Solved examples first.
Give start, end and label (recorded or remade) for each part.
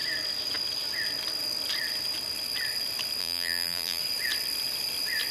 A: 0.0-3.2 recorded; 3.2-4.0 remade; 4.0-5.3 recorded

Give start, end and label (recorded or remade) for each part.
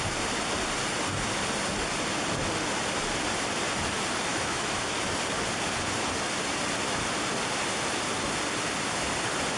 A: 0.0-4.3 recorded; 4.3-4.9 remade; 4.9-9.6 recorded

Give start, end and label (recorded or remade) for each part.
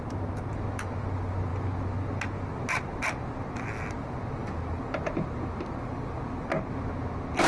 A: 0.0-7.5 recorded